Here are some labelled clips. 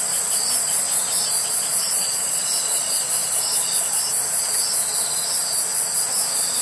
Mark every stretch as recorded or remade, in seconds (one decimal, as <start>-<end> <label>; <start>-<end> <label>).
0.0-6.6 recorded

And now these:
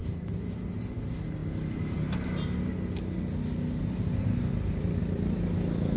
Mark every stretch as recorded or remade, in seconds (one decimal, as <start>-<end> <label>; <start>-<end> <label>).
0.0-6.0 recorded

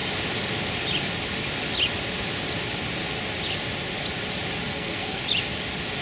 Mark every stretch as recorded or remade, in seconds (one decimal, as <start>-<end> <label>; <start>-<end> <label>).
0.0-4.7 recorded; 4.7-5.2 remade; 5.2-6.0 recorded